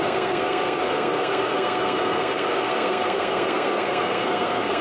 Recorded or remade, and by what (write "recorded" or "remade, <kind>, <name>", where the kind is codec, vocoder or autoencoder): remade, codec, SNAC